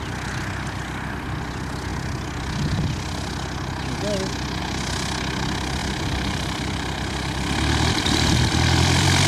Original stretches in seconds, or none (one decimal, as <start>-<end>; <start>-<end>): 0.0-5.8